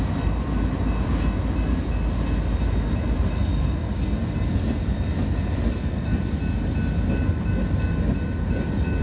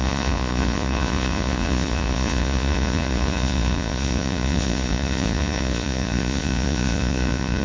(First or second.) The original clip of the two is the first